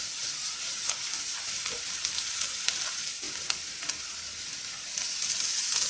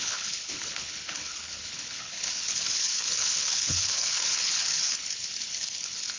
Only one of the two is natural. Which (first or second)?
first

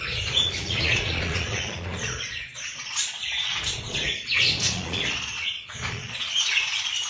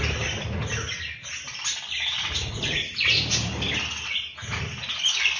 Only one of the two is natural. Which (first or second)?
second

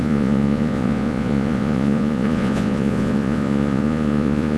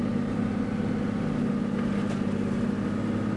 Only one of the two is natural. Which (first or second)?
second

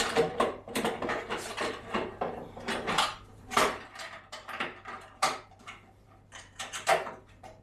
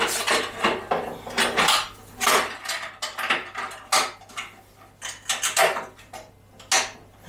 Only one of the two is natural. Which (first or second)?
second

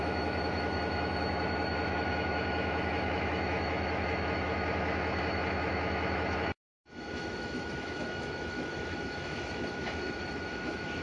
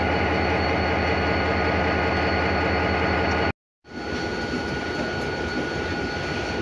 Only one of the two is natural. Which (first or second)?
second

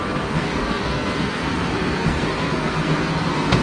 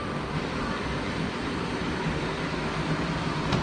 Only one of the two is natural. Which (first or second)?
second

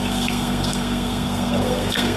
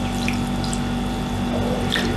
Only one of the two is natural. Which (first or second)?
second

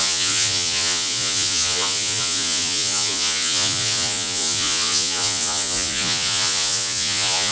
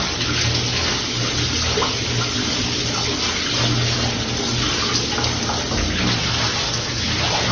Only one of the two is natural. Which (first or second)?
second